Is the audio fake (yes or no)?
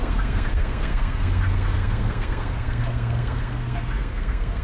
yes